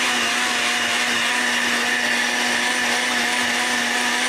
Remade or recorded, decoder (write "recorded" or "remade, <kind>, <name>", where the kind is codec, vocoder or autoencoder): recorded